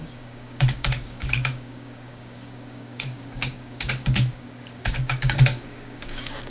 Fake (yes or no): yes